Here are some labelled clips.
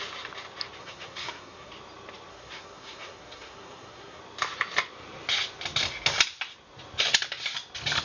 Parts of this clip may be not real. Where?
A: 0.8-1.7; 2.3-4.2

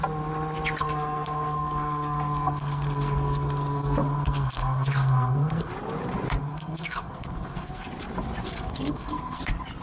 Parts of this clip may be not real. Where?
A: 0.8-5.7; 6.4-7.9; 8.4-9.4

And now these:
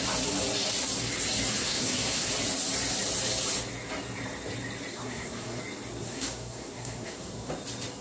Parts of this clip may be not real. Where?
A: 1.6-2.3; 4.9-5.6; 6.0-7.5

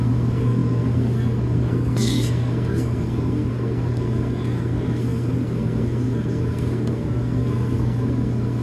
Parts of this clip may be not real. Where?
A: 0.0-8.6

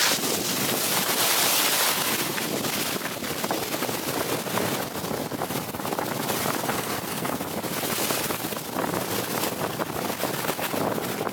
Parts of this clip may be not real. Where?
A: 6.7-7.4

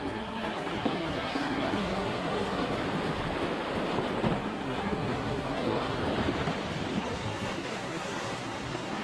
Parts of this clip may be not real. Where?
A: 0.0-2.8; 4.4-6.0; 7.0-9.0

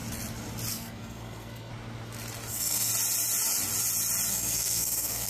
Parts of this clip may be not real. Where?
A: 0.7-1.7; 2.5-2.9; 4.3-5.3